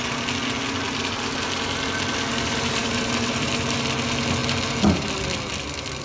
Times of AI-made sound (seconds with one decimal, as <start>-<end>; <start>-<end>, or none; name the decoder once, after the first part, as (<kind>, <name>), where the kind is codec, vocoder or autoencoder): 2.8-3.5 (vocoder, BigVGAN v2)